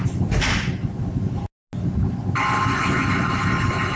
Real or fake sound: real